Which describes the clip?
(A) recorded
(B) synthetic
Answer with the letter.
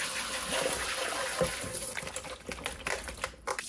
A